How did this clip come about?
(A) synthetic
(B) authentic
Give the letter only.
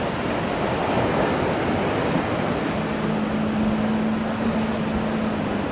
B